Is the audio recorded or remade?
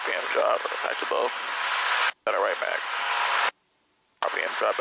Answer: recorded